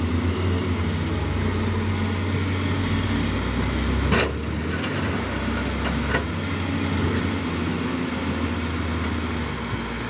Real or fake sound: real